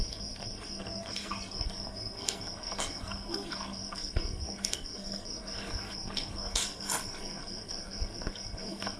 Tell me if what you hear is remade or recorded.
remade